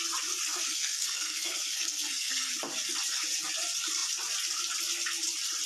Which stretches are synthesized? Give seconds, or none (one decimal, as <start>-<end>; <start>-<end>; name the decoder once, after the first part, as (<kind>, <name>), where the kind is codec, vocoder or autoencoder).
0.5-2.5 (codec, SNAC)